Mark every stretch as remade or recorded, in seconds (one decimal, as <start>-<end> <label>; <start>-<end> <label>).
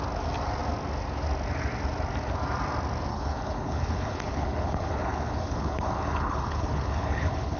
0.0-3.1 recorded; 3.1-7.6 remade